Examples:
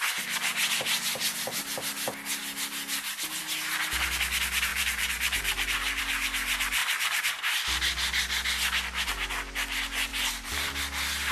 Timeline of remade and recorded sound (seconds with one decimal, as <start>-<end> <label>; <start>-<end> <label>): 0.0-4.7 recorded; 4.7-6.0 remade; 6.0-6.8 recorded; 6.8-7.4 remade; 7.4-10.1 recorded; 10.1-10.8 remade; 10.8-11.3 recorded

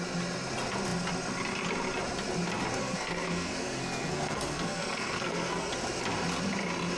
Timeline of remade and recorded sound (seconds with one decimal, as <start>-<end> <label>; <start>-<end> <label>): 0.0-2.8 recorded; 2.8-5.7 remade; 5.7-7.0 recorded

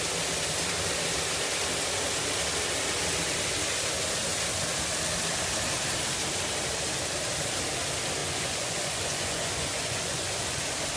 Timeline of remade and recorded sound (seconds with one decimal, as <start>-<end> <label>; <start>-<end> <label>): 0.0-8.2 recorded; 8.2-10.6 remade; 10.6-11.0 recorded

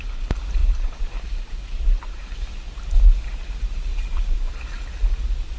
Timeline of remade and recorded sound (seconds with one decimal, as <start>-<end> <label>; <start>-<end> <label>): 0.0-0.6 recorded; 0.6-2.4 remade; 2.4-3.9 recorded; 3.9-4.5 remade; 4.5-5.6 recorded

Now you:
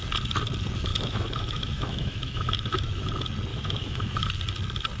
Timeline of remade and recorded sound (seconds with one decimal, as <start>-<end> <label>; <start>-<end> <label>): 0.0-0.9 recorded; 0.9-3.1 remade; 3.1-3.5 recorded; 3.5-4.3 remade; 4.3-5.0 recorded

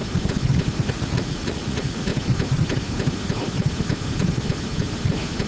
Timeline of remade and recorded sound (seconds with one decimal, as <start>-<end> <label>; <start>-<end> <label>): 0.0-0.9 recorded; 0.9-2.1 remade; 2.1-5.5 recorded